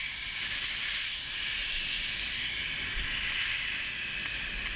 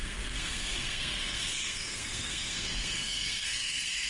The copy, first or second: second